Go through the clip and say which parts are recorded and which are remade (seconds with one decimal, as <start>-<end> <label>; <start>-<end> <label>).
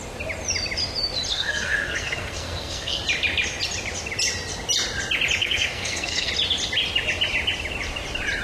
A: 0.0-1.3 recorded; 1.3-3.0 remade; 3.0-5.4 recorded; 5.4-6.3 remade; 6.3-8.4 recorded